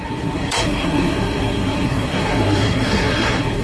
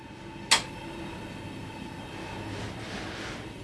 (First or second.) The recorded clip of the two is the second